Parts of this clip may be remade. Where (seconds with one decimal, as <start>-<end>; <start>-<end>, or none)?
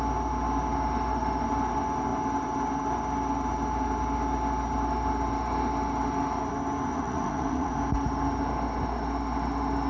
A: 6.9-7.7